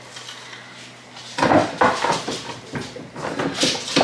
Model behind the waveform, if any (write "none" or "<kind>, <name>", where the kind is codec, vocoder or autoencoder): none